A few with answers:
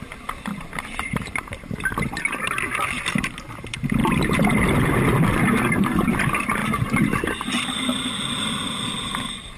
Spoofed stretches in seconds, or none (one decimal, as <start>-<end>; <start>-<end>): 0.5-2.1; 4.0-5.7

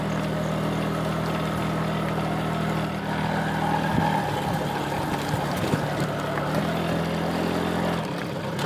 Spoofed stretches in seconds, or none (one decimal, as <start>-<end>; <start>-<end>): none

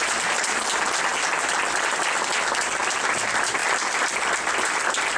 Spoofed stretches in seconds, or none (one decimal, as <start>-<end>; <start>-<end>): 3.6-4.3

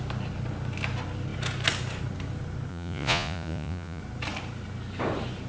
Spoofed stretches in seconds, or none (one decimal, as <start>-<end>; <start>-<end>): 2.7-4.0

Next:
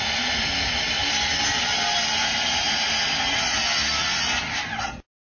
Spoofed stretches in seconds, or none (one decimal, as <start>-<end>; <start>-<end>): none